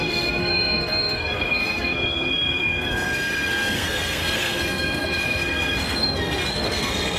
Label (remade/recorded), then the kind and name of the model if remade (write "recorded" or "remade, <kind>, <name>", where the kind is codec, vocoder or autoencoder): remade, codec, SNAC